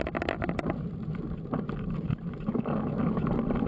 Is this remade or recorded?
recorded